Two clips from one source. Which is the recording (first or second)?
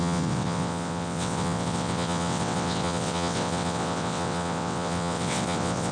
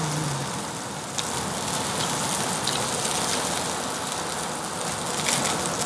second